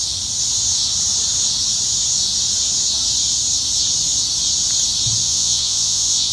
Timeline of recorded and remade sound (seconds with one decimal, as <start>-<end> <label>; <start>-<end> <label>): 0.0-5.2 recorded; 5.2-6.3 remade